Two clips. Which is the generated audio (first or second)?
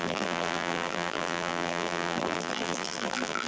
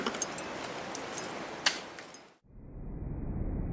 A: first